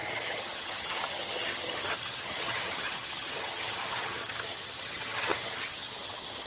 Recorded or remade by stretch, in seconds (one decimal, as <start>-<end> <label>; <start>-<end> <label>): 0.0-6.5 remade